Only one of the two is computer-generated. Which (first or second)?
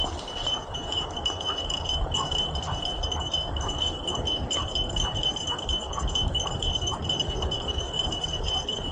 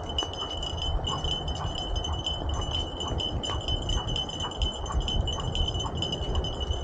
first